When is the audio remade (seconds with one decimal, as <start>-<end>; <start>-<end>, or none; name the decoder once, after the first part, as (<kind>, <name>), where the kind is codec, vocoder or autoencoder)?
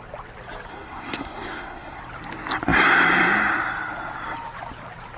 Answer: 0.7-2.0 (codec, SNAC)